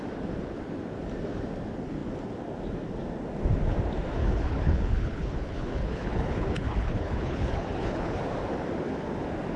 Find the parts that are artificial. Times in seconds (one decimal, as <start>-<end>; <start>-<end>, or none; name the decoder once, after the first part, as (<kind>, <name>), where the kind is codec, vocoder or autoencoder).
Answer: 4.2-8.2 (codec, HILCodec)